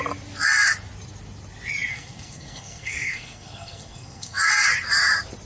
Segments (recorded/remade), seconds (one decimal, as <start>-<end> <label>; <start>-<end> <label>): 0.0-1.9 recorded; 1.9-4.5 remade; 4.5-5.5 recorded

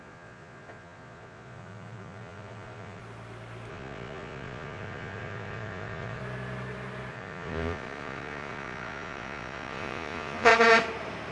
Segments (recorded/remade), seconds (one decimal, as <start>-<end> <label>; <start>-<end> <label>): 0.0-3.0 remade; 3.0-3.7 recorded; 3.7-6.2 remade; 6.2-7.1 recorded; 7.1-10.5 remade; 10.5-11.3 recorded

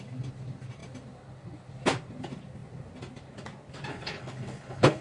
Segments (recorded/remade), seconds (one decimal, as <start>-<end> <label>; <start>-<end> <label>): 0.0-3.9 recorded; 3.9-5.0 remade